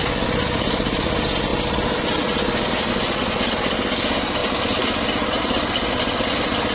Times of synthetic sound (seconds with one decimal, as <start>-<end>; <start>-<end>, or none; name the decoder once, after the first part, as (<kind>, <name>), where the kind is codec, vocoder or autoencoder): none